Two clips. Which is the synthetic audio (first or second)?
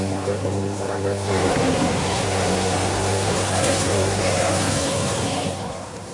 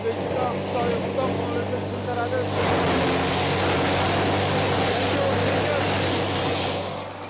first